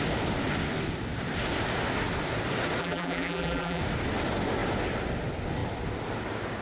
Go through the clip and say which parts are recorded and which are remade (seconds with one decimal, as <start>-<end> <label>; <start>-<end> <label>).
0.0-2.8 recorded; 2.8-3.8 remade; 3.8-6.6 recorded